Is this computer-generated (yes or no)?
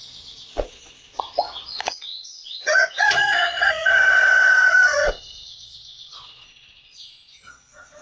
yes